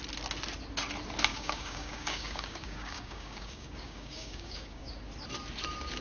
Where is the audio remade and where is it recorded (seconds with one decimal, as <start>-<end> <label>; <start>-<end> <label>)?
0.0-1.3 recorded; 1.3-4.9 remade; 4.9-6.0 recorded